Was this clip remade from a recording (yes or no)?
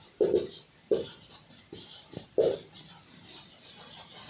no